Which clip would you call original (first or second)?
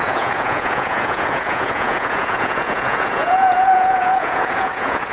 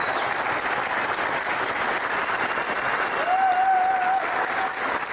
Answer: second